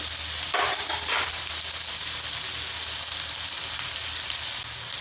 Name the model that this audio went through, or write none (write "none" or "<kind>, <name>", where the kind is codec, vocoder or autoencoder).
none